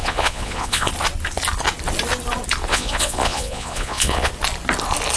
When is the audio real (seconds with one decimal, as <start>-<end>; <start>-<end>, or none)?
0.9-2.7; 4.3-5.2